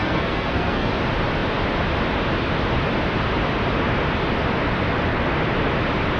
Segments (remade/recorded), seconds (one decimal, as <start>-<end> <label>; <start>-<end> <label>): 0.0-0.9 remade; 0.9-6.2 recorded